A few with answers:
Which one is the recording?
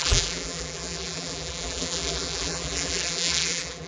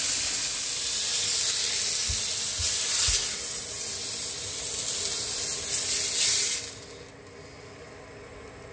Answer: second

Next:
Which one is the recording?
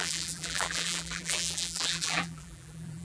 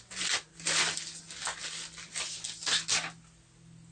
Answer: second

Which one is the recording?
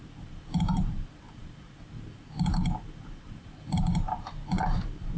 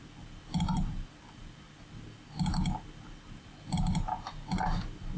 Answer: second